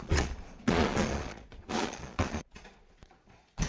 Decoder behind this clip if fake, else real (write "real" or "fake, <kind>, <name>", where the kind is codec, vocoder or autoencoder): fake, vocoder, Vocos